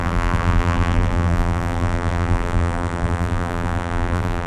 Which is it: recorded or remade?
remade